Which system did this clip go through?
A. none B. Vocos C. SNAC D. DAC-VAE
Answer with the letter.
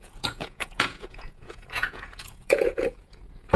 B